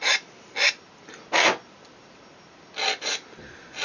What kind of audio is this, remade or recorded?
recorded